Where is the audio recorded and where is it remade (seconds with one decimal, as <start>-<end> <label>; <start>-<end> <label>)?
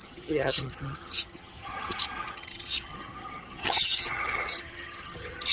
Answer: 0.0-5.5 remade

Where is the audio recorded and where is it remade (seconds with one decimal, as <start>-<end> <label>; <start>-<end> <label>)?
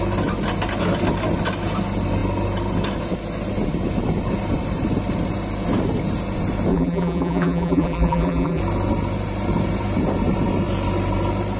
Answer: 0.0-6.7 recorded; 6.7-8.6 remade; 8.6-11.6 recorded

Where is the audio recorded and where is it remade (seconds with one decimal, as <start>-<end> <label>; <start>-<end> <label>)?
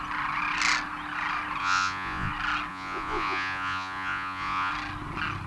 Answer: 0.0-1.6 recorded; 1.6-2.3 remade; 2.3-2.7 recorded; 2.7-4.7 remade; 4.7-5.5 recorded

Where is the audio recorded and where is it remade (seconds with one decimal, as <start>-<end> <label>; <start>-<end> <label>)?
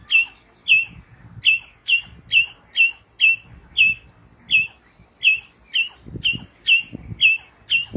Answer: 0.0-1.8 recorded; 1.8-3.2 remade; 3.2-8.0 recorded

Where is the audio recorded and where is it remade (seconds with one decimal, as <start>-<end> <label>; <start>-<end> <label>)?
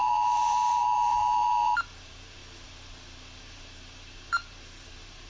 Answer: 0.0-2.4 remade; 2.4-3.4 recorded; 3.4-5.3 remade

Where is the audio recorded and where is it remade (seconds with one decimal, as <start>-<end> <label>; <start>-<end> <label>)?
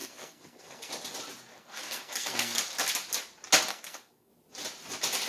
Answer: 0.0-0.9 remade; 0.9-1.5 recorded; 1.5-2.6 remade; 2.6-3.7 recorded; 3.7-4.3 remade; 4.3-5.3 recorded